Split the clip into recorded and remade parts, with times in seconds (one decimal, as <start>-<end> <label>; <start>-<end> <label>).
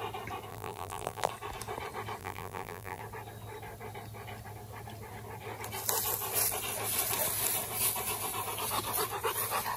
0.0-0.5 recorded; 0.5-1.3 remade; 1.3-2.2 recorded; 2.2-3.0 remade; 3.0-9.8 recorded